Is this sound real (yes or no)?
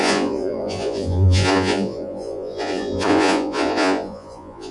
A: no